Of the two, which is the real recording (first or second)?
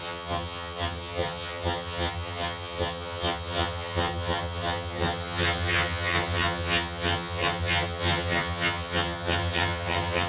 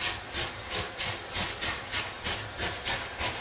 second